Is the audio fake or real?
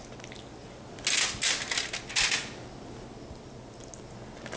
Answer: real